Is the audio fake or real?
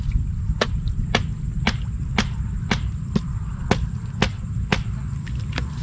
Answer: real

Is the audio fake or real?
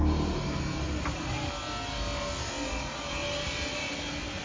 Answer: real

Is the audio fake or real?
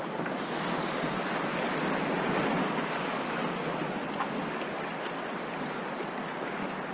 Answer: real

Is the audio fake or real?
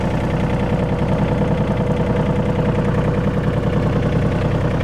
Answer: real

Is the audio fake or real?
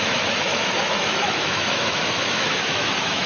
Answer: fake